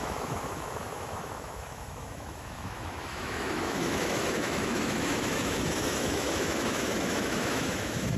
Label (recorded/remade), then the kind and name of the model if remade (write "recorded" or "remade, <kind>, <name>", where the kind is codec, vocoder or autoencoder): remade, autoencoder, DAC-VAE